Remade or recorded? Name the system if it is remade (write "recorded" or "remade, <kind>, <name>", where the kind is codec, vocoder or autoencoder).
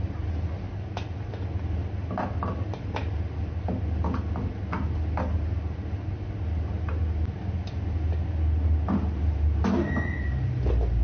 recorded